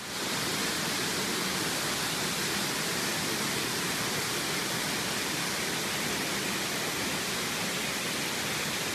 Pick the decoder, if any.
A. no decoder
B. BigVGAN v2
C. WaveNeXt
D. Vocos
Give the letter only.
A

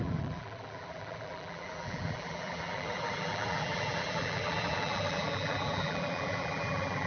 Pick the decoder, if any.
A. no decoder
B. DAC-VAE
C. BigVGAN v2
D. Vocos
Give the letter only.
C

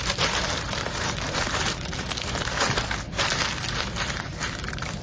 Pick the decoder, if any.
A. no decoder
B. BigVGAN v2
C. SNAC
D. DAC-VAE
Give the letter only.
B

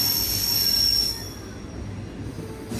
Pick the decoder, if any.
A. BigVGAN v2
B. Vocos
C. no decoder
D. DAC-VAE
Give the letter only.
C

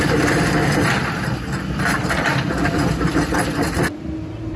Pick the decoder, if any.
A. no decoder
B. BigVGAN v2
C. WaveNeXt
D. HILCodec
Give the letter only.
B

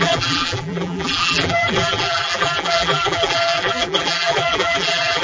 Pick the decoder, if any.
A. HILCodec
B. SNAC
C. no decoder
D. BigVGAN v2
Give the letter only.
D